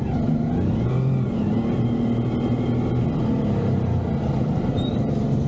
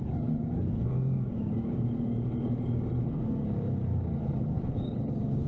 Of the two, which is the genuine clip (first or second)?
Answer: first